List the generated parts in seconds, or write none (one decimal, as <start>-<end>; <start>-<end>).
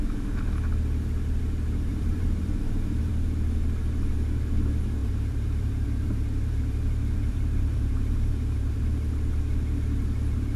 1.9-3.1; 5.0-8.8